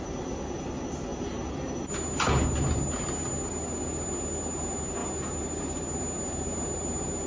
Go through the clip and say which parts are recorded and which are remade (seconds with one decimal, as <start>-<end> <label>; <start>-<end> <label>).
0.0-7.3 recorded